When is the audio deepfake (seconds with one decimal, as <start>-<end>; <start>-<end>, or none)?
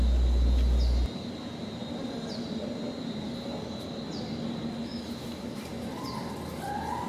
4.8-5.6